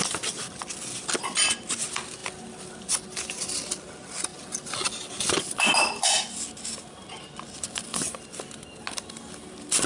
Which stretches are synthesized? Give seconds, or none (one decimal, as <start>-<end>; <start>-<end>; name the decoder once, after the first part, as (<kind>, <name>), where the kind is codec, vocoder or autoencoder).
none